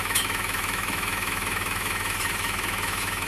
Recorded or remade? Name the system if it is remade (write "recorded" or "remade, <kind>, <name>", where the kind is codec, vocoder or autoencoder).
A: remade, autoencoder, DAC-VAE